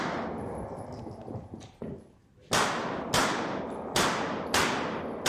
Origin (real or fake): real